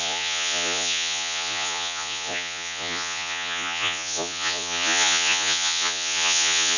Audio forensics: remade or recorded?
remade